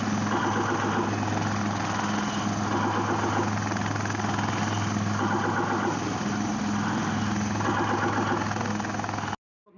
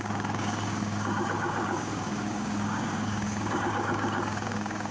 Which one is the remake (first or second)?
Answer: second